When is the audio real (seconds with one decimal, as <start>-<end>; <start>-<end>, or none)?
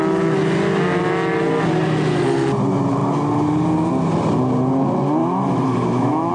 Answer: 0.0-5.2